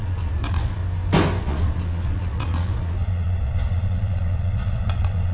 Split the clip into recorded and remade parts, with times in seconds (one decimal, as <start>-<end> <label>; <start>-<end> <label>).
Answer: 0.0-0.8 remade; 0.8-1.4 recorded; 1.4-5.3 remade